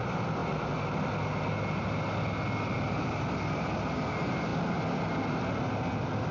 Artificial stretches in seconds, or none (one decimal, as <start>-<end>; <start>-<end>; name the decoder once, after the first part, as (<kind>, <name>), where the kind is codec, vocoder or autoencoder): none